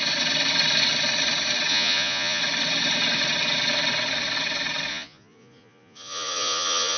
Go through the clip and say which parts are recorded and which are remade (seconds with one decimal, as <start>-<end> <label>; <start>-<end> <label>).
0.0-1.7 recorded; 1.7-2.4 remade; 2.4-4.9 recorded; 4.9-7.0 remade